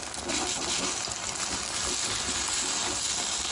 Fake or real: real